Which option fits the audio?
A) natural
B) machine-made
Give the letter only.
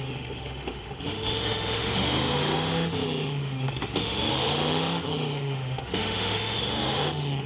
B